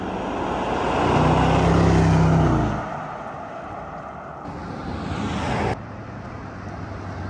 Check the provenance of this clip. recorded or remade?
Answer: recorded